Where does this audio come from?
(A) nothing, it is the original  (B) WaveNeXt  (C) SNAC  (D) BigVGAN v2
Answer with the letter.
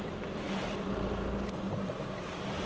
A